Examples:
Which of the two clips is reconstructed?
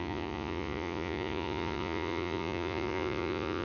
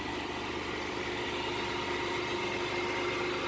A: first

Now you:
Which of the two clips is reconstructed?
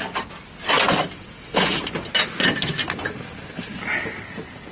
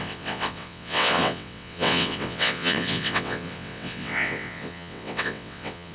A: second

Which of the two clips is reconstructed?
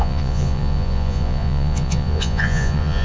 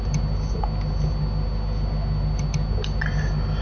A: first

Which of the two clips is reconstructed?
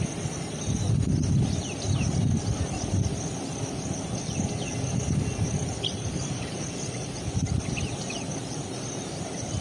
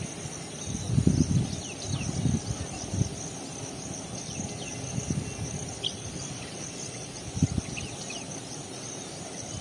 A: first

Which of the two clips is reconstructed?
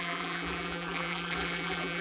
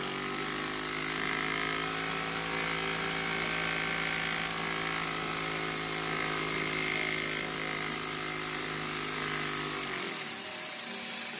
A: first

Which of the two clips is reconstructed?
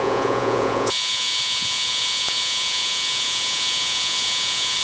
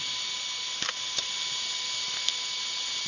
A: first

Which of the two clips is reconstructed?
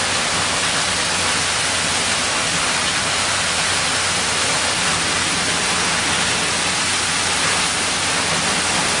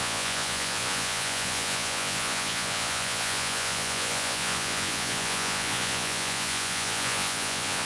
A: second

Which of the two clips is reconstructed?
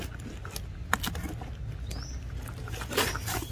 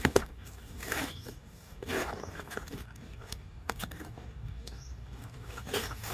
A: second